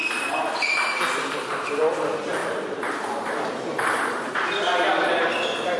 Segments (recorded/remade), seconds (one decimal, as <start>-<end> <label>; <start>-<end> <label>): 0.0-1.8 remade; 1.8-2.4 recorded; 2.4-4.3 remade; 4.3-5.8 recorded